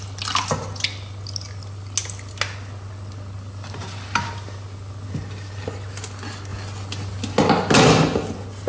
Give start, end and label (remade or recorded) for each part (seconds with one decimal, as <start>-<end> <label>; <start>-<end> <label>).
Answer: 0.0-8.7 recorded